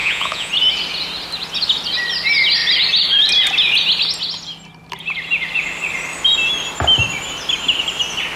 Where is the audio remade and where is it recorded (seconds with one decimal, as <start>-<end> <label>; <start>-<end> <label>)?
0.0-0.5 remade; 0.5-8.4 recorded